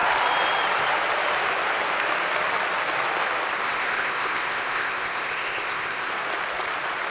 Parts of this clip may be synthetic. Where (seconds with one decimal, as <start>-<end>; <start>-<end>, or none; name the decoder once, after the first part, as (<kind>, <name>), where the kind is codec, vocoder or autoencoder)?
3.6-6.1 (codec, ZipCodec)